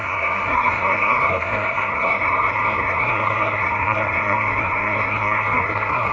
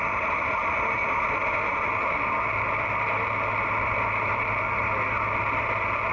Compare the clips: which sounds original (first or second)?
second